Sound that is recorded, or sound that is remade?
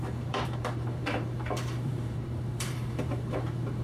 remade